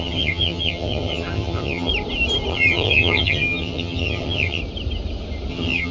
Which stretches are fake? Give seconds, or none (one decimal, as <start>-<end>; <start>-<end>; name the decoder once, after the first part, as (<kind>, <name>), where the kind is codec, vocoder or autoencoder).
0.0-1.9 (vocoder, HiFi-GAN); 2.5-4.6; 5.5-5.9